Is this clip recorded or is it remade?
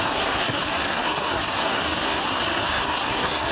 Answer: remade